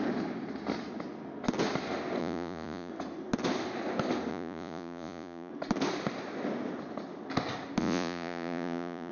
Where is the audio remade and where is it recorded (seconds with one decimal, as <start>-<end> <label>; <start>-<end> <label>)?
0.0-2.2 recorded; 2.2-2.9 remade; 2.9-4.3 recorded; 4.3-5.5 remade; 5.5-7.8 recorded; 7.8-9.1 remade

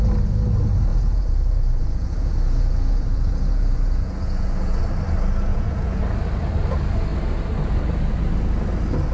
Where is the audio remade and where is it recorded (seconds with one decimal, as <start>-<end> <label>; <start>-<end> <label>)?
0.0-0.9 recorded; 0.9-4.8 remade; 4.8-5.5 recorded; 5.5-6.0 remade; 6.0-9.1 recorded

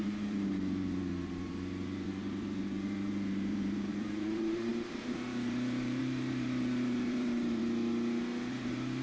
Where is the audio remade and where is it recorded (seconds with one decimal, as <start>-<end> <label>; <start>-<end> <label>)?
0.0-7.6 remade; 7.6-8.5 recorded; 8.5-9.0 remade

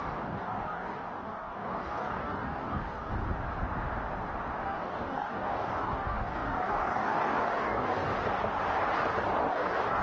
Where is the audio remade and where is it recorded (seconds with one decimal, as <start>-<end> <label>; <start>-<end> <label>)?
0.0-3.1 remade; 3.1-4.6 recorded; 4.6-8.1 remade; 8.1-9.5 recorded; 9.5-10.0 remade